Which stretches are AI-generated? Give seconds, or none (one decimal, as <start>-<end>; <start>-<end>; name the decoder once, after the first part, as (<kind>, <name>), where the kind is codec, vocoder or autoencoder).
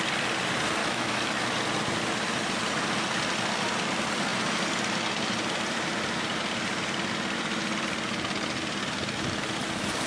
0.8-1.3 (autoencoder, DAC-VAE)